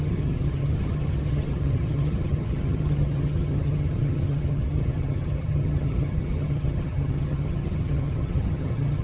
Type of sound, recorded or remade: remade